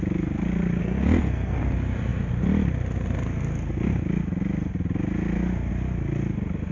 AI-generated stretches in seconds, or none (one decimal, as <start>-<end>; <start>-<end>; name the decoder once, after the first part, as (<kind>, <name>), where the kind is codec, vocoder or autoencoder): 0.8-1.6 (codec, SNAC)